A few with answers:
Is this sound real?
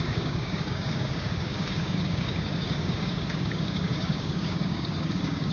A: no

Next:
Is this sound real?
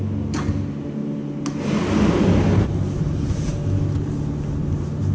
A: yes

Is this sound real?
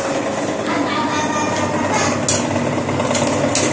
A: yes